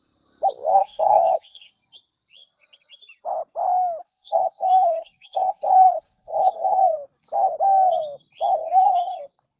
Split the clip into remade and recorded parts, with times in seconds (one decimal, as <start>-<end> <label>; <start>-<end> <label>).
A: 0.0-0.7 recorded; 0.7-1.7 remade; 1.7-4.0 recorded; 4.0-6.8 remade; 6.8-8.6 recorded; 8.6-9.2 remade; 9.2-9.6 recorded